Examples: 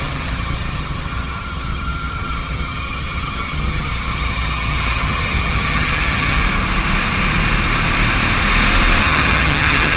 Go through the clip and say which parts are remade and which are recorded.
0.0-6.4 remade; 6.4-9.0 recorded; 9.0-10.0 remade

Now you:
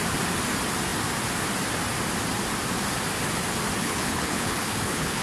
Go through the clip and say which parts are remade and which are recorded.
0.0-3.8 recorded; 3.8-5.2 remade

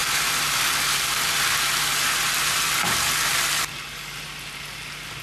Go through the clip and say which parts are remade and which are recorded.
0.0-3.1 remade; 3.1-5.2 recorded

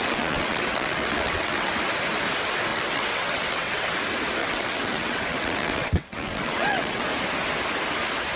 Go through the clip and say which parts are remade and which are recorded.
0.0-1.7 remade; 1.7-2.7 recorded; 2.7-4.0 remade; 4.0-4.4 recorded; 4.4-7.0 remade; 7.0-8.4 recorded

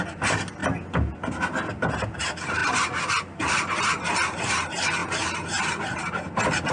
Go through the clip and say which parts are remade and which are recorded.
0.0-0.6 remade; 0.6-2.2 recorded; 2.2-6.7 remade

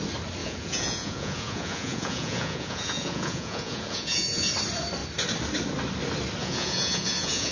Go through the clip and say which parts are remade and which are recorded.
0.0-0.4 recorded; 0.4-4.5 remade; 4.5-6.4 recorded; 6.4-7.5 remade

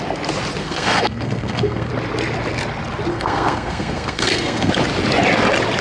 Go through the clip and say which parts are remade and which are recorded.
0.0-0.6 recorded; 0.6-1.9 remade; 1.9-3.1 recorded; 3.1-4.7 remade; 4.7-5.8 recorded